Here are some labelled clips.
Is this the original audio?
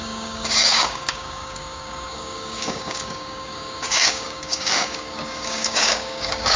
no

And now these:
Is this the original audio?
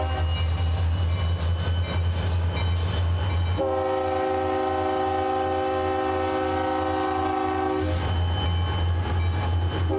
yes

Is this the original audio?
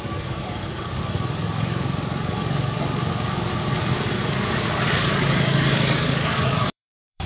no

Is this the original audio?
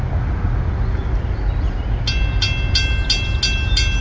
yes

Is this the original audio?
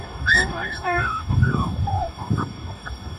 no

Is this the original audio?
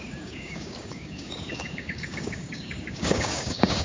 no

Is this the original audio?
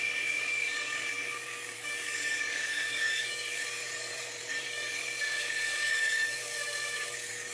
no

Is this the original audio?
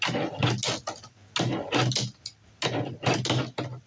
yes